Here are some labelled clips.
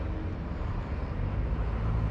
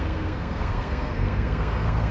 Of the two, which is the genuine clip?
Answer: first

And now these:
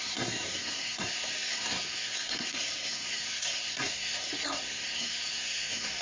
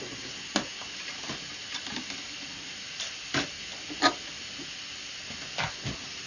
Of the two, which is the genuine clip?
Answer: second